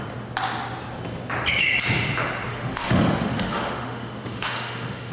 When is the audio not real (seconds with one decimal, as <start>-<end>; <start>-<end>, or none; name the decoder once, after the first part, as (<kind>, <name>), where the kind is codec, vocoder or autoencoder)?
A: 2.5-5.1 (autoencoder, DAC-VAE)